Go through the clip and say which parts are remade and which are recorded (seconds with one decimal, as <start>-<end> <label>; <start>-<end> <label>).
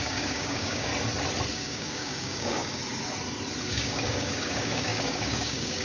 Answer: 0.0-0.9 remade; 0.9-1.5 recorded; 1.5-2.8 remade; 2.8-3.7 recorded; 3.7-5.8 remade